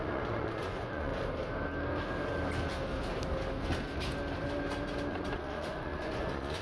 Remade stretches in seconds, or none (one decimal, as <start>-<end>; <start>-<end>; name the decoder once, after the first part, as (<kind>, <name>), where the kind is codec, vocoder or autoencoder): 0.0-1.1 (vocoder, Vocos); 5.1-6.6